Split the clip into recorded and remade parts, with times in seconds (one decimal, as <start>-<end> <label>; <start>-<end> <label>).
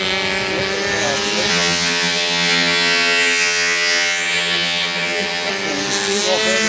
0.0-1.5 recorded; 1.5-5.5 remade; 5.5-6.7 recorded